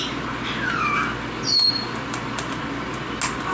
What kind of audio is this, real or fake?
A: real